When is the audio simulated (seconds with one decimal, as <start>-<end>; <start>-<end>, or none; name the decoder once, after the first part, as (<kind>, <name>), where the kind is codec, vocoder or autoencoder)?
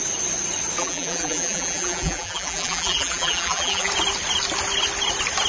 0.8-3.9 (vocoder, BigVGAN v2)